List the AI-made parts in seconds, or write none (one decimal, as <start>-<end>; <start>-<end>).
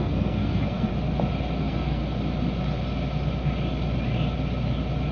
0.0-0.9; 1.6-2.0